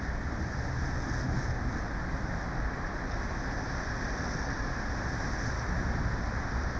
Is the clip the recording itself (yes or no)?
yes